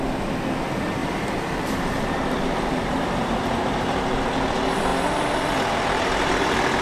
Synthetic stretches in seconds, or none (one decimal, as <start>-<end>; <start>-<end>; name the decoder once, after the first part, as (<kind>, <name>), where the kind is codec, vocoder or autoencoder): 1.0-3.2 (vocoder, BigVGAN v2)